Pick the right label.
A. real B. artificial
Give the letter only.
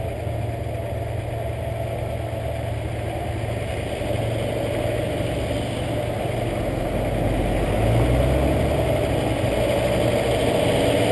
A